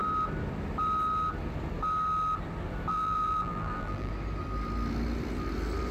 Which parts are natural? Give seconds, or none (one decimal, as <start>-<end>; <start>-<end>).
0.0-2.9; 4.1-5.9

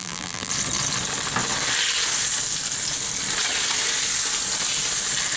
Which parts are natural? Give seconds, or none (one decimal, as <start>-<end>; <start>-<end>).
0.5-5.4

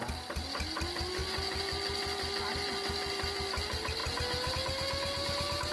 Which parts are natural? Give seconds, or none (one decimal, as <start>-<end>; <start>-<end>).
0.0-5.7